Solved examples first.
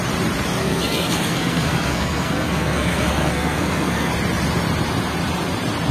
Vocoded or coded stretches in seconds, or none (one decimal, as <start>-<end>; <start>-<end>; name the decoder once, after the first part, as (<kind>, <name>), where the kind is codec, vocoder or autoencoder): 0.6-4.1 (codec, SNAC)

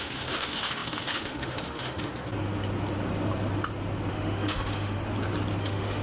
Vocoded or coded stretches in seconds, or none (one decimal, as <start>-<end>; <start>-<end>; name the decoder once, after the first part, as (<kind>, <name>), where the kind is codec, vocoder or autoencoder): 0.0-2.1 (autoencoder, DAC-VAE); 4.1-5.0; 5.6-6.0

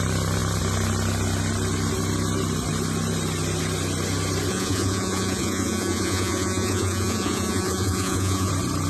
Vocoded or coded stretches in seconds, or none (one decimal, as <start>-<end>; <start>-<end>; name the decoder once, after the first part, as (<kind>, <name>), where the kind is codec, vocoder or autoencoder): 4.5-8.5 (vocoder, Vocos)

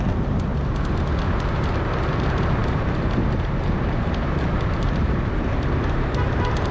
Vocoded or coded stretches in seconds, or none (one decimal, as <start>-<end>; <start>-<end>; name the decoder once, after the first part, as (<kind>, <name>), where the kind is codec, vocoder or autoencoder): 0.0-0.5 (vocoder, BigVGAN v2); 1.2-6.7

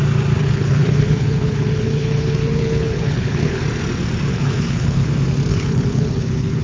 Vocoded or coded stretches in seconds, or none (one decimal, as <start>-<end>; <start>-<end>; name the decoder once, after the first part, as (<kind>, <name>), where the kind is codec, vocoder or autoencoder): 0.4-3.6 (codec, HILCodec); 4.3-5.1; 5.5-6.6

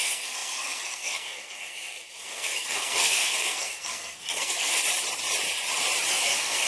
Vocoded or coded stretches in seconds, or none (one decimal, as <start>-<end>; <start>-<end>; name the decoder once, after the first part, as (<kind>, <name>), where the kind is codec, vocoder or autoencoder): 0.0-4.8 (codec, SNAC); 6.1-6.7

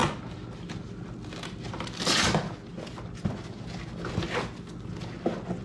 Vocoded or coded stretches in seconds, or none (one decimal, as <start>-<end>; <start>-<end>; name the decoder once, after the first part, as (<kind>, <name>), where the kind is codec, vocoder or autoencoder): none